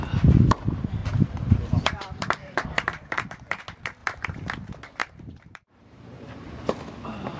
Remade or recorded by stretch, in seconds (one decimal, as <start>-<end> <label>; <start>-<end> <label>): 0.0-1.0 recorded; 1.0-3.6 remade; 3.6-4.0 recorded; 4.0-4.5 remade; 4.5-5.0 recorded; 5.0-6.6 remade; 6.6-7.4 recorded